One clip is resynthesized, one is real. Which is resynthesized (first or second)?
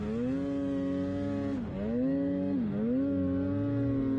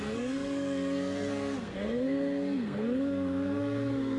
second